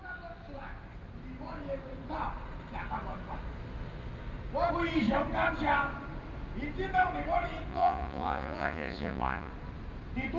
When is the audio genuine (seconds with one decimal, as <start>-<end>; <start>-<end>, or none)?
0.0-7.7; 9.5-10.4